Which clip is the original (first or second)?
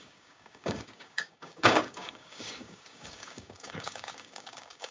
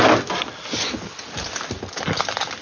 second